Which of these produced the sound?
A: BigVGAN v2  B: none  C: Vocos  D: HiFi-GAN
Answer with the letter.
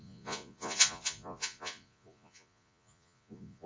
C